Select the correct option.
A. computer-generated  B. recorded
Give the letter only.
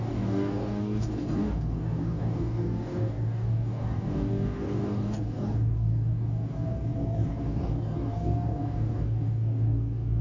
A